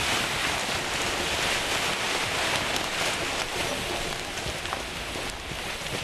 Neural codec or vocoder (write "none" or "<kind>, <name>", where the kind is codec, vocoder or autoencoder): none